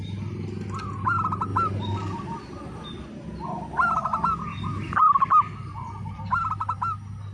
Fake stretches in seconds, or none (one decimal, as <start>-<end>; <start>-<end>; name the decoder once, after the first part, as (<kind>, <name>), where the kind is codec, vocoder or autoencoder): none